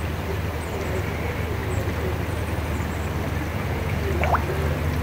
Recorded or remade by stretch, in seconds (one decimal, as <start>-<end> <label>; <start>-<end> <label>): 0.0-3.5 recorded; 3.5-4.0 remade; 4.0-5.0 recorded